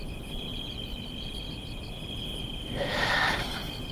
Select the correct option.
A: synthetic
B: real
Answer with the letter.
B